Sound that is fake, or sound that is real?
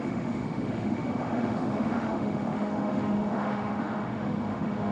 fake